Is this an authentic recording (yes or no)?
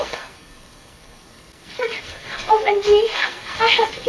no